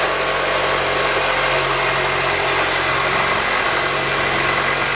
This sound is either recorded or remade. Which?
recorded